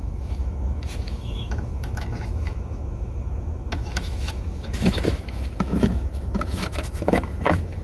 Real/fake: fake